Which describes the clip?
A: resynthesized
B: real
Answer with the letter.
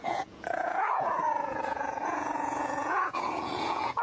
A